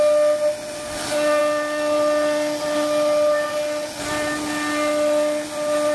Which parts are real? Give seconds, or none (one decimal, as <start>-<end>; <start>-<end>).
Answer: 0.0-5.9